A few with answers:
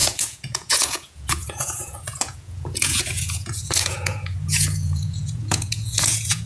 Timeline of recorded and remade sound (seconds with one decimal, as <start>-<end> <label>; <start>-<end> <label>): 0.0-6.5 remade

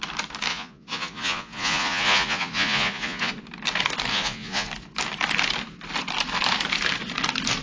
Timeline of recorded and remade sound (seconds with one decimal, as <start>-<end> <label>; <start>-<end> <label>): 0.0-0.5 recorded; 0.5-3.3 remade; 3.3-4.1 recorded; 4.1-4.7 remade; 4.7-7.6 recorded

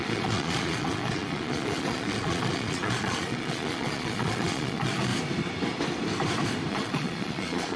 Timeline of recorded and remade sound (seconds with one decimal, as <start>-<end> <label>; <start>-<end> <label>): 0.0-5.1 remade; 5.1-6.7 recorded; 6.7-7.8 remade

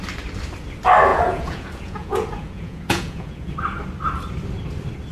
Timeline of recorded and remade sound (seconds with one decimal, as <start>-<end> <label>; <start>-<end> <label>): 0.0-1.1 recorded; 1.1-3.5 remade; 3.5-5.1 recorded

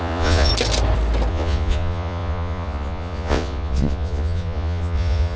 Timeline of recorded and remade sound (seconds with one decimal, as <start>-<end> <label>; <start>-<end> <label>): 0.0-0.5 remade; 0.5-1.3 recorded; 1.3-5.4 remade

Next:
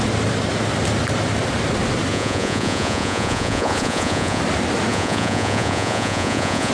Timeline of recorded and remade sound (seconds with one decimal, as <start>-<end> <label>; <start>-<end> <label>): 0.0-2.1 recorded; 2.1-4.4 remade; 4.4-4.9 recorded; 4.9-6.7 remade

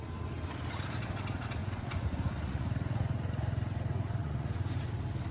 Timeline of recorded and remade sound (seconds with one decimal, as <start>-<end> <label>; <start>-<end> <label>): 0.0-1.6 recorded; 1.6-4.8 remade; 4.8-5.3 recorded

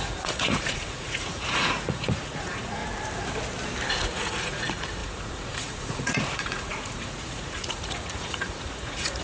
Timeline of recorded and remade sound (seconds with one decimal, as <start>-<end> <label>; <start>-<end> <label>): 0.0-2.8 remade; 2.8-3.9 recorded; 3.9-9.2 remade